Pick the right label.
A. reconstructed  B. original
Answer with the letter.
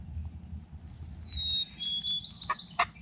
B